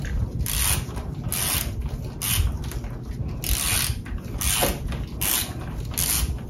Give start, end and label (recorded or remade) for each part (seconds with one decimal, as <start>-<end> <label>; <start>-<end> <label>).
0.0-6.5 recorded